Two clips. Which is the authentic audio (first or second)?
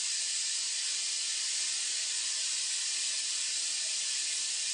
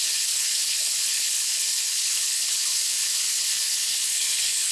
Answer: first